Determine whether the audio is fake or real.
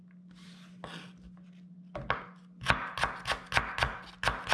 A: real